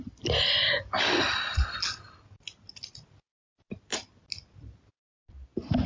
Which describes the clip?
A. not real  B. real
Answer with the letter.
B